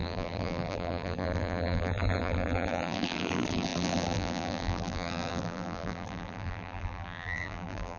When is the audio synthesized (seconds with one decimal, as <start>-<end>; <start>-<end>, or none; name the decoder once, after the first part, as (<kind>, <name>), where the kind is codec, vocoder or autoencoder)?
0.0-8.0 (vocoder, BigVGAN v2)